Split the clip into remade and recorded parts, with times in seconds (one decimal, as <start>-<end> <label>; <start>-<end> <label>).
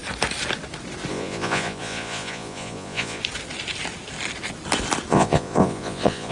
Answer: 0.0-1.1 recorded; 1.1-3.2 remade; 3.2-5.1 recorded; 5.1-6.3 remade